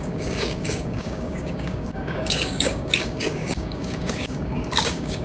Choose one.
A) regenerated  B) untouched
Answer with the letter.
A